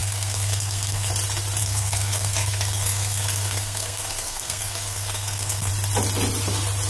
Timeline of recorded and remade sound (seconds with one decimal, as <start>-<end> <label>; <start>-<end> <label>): 0.0-1.1 remade; 1.1-1.6 recorded; 1.6-5.7 remade; 5.7-6.9 recorded